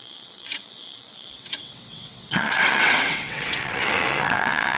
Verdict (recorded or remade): remade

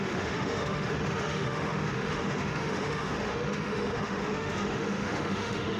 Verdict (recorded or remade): remade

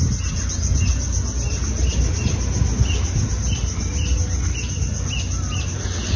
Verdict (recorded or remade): recorded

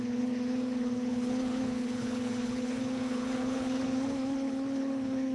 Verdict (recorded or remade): remade